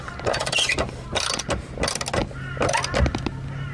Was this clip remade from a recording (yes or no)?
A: no